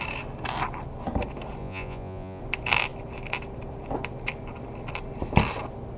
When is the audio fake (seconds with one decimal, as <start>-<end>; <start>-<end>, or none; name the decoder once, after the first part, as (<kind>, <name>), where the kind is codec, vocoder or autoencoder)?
1.6-2.4 (vocoder, Vocos)